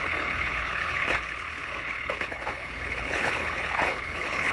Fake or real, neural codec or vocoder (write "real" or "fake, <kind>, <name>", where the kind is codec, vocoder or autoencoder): fake, codec, HILCodec